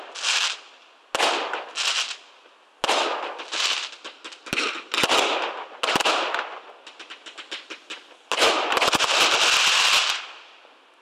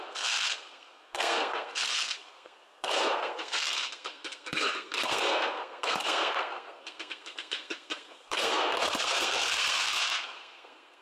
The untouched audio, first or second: first